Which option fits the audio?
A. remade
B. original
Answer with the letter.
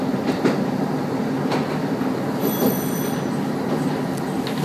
B